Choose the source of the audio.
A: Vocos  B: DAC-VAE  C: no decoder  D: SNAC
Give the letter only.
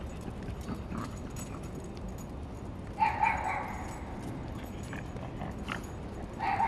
C